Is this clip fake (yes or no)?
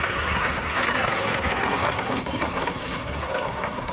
yes